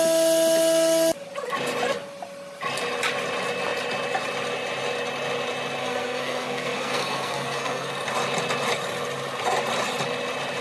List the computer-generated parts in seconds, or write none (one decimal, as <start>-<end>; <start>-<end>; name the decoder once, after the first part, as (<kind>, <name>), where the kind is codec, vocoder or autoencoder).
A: 5.8-7.9 (codec, SNAC)